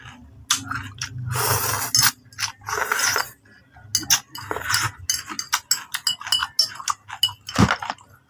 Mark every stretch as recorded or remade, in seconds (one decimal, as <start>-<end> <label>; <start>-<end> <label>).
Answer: 0.0-8.3 recorded